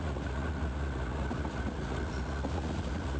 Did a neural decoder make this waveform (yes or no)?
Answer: yes